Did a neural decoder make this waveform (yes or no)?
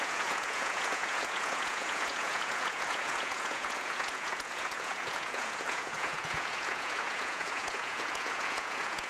yes